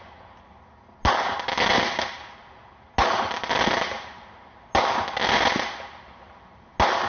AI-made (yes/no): no